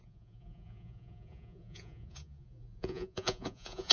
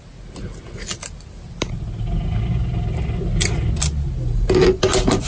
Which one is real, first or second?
second